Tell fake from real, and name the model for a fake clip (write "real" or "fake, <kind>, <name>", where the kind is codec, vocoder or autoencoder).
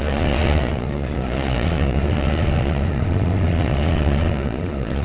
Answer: fake, vocoder, Vocos